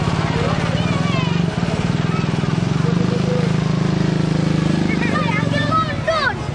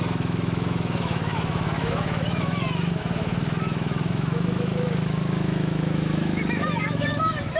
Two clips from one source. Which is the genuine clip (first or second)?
first